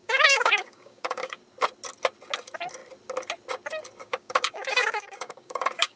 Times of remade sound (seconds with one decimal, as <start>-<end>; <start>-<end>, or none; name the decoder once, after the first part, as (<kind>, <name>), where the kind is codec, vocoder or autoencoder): 0.0-1.4 (codec, DAC); 4.0-6.0

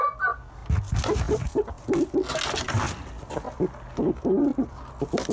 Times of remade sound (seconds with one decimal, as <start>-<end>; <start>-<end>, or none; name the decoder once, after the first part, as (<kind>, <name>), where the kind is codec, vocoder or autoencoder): none

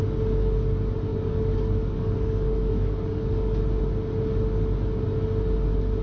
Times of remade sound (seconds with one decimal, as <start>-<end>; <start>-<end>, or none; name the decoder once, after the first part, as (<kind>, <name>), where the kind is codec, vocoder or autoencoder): 1.1-3.6 (codec, DAC)